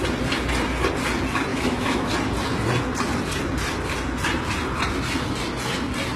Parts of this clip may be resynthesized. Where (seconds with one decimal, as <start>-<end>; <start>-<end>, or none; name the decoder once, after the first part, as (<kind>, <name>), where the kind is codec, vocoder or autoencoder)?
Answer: 1.5-2.1 (autoencoder, DAC-VAE)